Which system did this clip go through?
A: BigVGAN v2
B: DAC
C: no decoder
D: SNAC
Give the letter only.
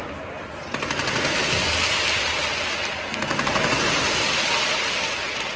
C